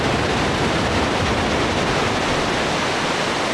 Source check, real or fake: real